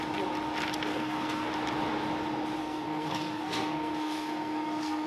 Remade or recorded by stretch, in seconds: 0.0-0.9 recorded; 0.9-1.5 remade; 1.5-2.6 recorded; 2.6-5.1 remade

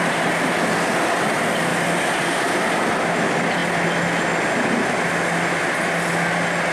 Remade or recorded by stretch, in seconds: 0.0-6.7 recorded

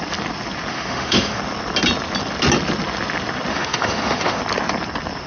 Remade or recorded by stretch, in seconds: 0.0-0.7 recorded; 0.7-1.4 remade; 1.4-3.5 recorded; 3.5-4.4 remade; 4.4-5.3 recorded

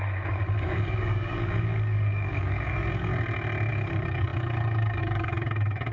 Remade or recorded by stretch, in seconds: 0.0-3.1 remade; 3.1-3.7 recorded; 3.7-5.9 remade

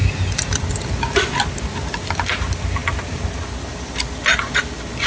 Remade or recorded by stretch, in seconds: 0.0-5.1 recorded

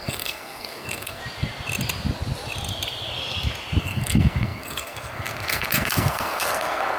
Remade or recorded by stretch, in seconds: 0.0-1.2 remade; 1.2-3.8 recorded; 3.8-7.0 remade